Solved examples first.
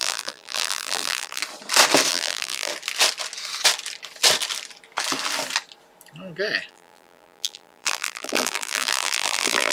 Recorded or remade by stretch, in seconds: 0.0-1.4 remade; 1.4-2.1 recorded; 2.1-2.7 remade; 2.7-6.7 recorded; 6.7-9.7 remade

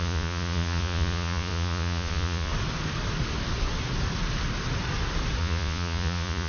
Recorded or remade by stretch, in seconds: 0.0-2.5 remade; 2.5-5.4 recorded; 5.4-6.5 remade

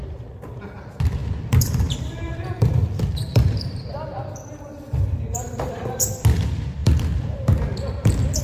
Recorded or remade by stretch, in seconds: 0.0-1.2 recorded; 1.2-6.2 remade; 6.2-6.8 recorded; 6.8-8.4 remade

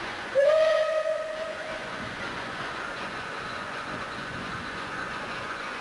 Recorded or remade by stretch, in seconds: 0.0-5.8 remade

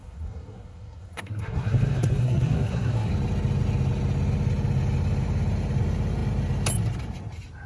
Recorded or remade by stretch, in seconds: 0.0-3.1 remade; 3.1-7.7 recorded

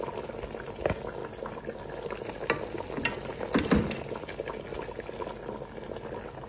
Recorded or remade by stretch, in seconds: 0.0-6.5 recorded

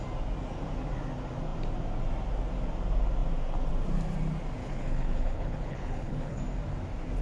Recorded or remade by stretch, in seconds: 0.0-4.6 recorded; 4.6-6.4 remade; 6.4-7.2 recorded